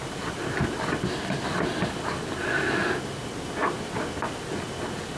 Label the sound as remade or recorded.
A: recorded